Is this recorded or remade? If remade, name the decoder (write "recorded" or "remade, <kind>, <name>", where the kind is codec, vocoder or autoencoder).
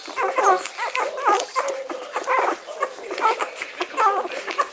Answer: recorded